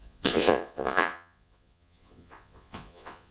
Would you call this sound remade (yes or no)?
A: yes